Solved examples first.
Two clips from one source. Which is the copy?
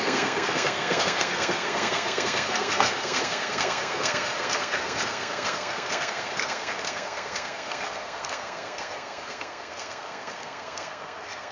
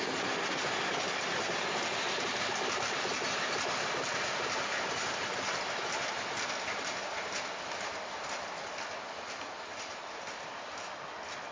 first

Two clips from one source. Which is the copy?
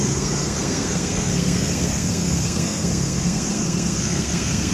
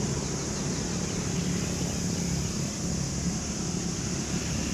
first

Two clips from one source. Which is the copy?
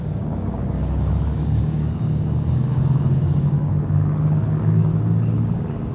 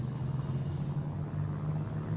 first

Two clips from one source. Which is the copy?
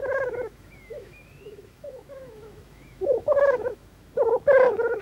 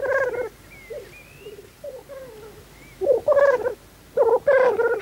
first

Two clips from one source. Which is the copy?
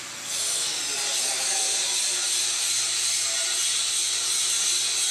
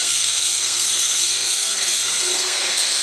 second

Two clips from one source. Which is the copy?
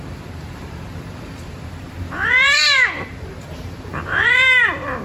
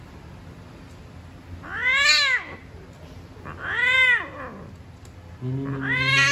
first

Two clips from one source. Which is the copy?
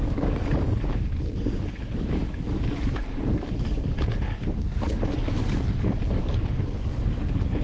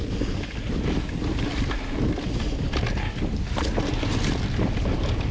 first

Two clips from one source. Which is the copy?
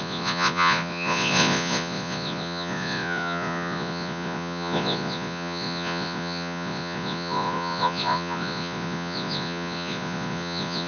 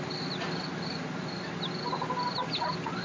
first